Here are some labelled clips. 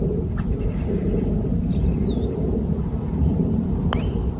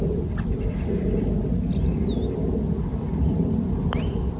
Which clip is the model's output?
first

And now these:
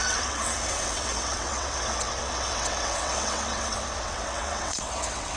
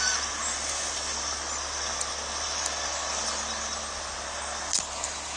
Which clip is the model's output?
first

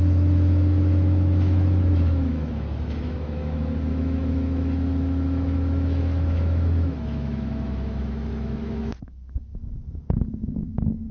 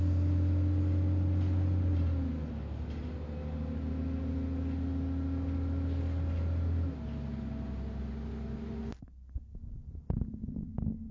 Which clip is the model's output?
first